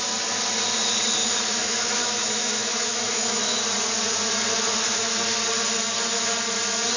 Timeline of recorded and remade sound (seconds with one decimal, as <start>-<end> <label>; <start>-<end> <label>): 0.0-1.2 recorded; 1.2-3.6 remade; 3.6-4.8 recorded; 4.8-5.4 remade; 5.4-7.0 recorded